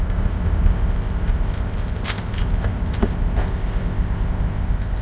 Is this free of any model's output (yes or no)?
no